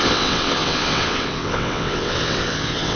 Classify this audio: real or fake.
fake